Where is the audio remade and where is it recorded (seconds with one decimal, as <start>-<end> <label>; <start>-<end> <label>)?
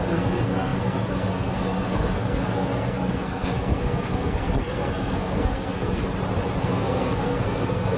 0.0-6.0 remade; 6.0-6.6 recorded; 6.6-8.0 remade